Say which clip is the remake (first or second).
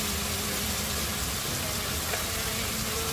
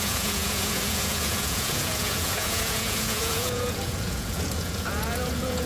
second